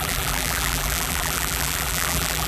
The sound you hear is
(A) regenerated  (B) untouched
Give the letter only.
A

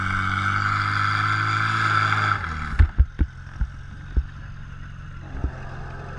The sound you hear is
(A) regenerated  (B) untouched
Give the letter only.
B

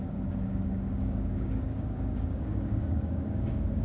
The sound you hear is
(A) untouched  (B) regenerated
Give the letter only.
B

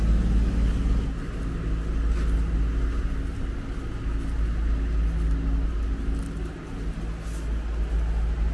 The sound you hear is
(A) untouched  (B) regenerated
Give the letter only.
A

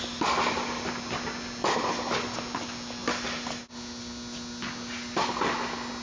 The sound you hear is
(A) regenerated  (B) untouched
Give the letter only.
B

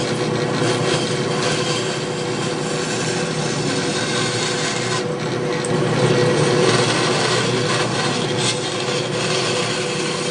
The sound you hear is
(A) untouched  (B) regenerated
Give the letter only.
A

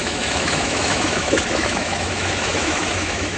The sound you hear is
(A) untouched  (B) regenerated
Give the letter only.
B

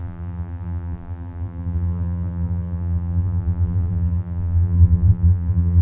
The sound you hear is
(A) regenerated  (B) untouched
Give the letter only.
A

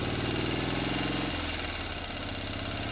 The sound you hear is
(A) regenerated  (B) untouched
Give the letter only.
B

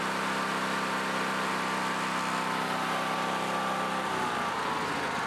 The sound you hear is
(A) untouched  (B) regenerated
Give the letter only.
A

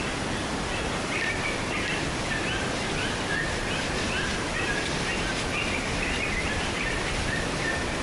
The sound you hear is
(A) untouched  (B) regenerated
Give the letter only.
A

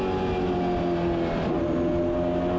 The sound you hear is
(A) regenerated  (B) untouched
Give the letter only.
B